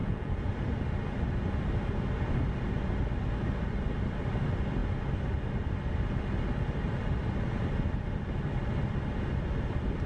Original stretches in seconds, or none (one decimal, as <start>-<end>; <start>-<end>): 0.5-10.1